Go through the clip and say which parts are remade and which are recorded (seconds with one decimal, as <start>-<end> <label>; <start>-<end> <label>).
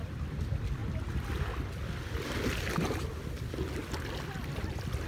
0.0-5.1 recorded